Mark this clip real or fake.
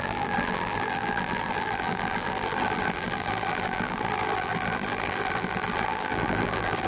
fake